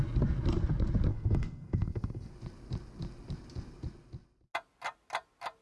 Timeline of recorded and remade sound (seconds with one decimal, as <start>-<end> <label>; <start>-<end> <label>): 0.0-1.1 recorded; 1.1-2.3 remade; 2.3-5.6 recorded